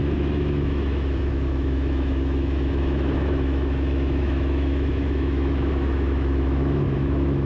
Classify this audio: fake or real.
fake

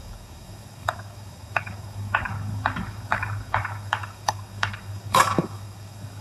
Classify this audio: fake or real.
fake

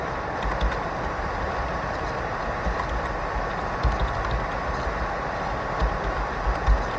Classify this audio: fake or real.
real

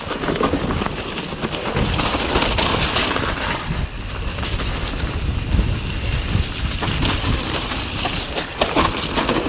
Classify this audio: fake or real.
real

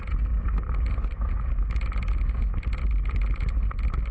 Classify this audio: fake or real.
real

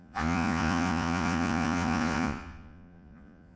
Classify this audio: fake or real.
fake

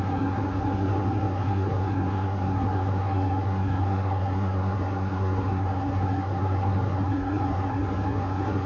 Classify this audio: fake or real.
fake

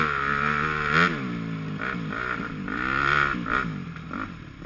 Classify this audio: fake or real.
real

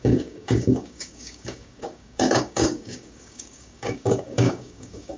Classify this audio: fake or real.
fake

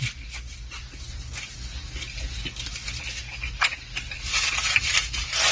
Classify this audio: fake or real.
real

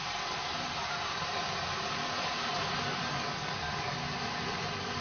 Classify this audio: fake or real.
real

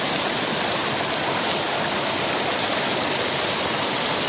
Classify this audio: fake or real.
real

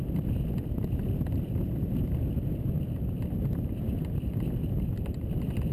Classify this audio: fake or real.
real